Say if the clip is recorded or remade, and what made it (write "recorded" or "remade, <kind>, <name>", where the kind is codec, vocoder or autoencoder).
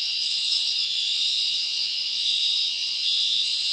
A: remade, vocoder, Vocos